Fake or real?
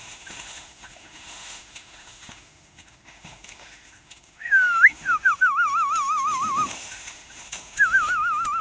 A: fake